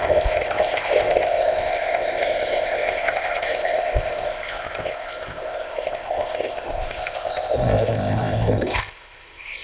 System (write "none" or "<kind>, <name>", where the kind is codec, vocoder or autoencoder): codec, ZipCodec